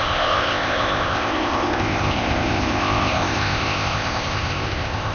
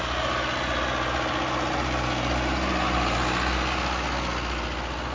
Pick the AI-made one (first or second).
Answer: first